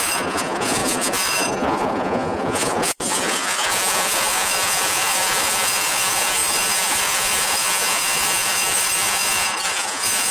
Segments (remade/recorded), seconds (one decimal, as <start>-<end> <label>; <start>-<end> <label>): 0.0-10.3 remade